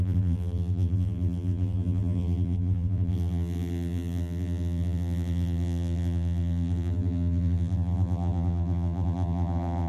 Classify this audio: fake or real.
fake